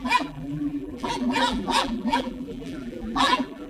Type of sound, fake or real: fake